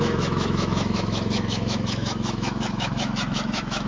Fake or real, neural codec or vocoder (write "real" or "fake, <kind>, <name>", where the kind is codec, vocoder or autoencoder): fake, autoencoder, DAC-VAE